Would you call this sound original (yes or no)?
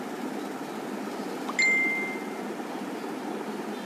yes